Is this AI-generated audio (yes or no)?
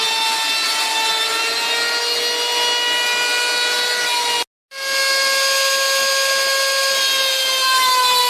no